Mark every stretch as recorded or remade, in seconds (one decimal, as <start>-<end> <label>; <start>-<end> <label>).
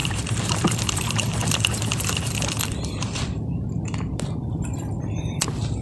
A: 0.0-3.5 remade; 3.5-4.4 recorded; 4.4-4.9 remade; 4.9-5.8 recorded